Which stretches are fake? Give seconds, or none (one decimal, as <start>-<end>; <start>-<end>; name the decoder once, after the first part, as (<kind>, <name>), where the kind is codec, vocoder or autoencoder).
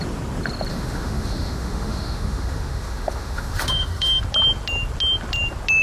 0.7-4.2 (autoencoder, DAC-VAE)